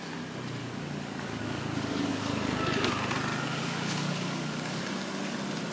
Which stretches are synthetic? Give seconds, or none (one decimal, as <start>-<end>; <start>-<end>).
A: 0.6-2.9; 3.3-4.8